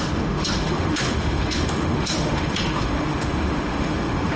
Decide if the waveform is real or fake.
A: fake